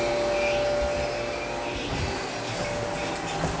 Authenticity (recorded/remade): recorded